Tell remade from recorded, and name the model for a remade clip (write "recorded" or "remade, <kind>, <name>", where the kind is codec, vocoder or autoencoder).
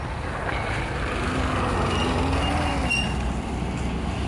recorded